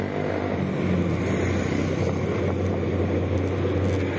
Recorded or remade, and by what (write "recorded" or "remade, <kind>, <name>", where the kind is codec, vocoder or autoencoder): recorded